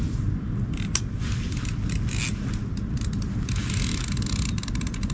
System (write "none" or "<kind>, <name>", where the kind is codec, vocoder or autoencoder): none